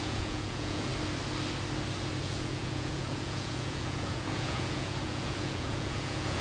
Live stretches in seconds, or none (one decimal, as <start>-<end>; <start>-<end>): 0.9-2.2